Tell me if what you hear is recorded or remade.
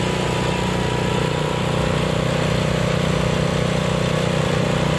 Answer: recorded